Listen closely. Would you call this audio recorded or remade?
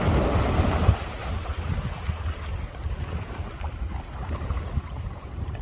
recorded